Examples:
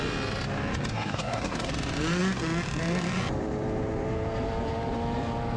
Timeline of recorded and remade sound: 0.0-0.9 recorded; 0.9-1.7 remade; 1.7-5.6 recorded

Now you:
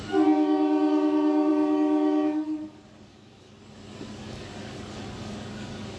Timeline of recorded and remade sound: 0.0-6.0 remade

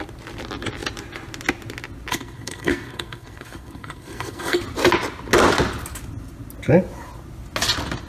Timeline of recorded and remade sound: 0.0-2.1 recorded; 2.1-4.6 remade; 4.6-8.1 recorded

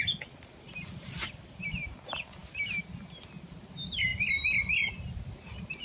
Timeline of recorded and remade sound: 0.0-5.8 recorded

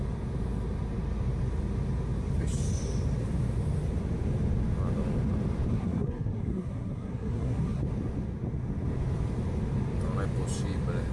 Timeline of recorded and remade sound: 0.0-5.7 recorded; 5.7-7.8 remade; 7.8-11.1 recorded

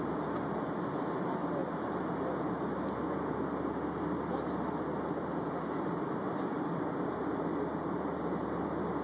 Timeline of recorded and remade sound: 0.0-9.0 recorded